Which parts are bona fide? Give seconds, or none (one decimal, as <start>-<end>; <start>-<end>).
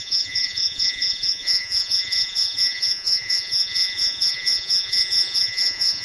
none